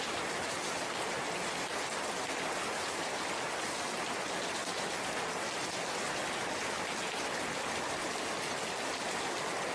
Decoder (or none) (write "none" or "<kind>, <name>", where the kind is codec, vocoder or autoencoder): none